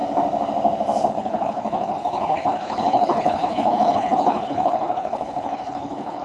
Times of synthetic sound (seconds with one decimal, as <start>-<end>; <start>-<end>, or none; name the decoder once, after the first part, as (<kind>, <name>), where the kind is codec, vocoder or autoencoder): 1.1-6.2 (codec, HILCodec)